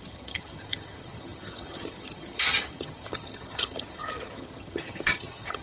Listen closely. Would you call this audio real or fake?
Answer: fake